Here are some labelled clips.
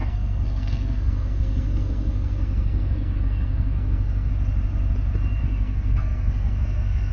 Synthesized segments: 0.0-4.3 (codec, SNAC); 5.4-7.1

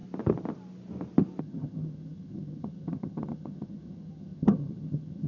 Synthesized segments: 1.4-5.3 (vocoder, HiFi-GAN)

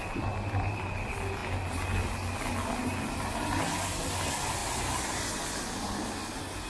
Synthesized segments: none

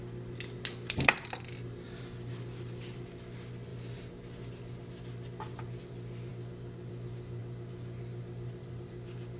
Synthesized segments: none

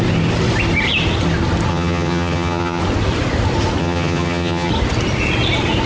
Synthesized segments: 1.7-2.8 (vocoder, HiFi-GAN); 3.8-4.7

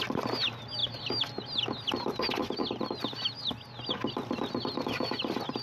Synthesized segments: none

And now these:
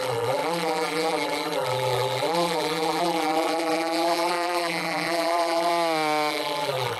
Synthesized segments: 0.0-5.7 (vocoder, BigVGAN v2); 6.3-7.0